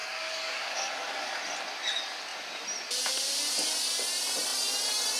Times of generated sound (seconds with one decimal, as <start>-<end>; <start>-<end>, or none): 0.0-1.4